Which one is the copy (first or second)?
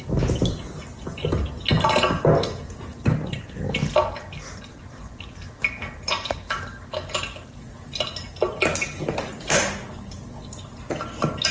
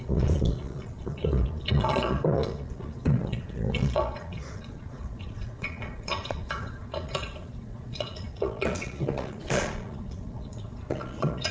second